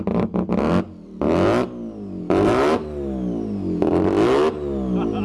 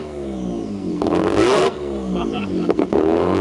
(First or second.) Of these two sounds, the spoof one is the second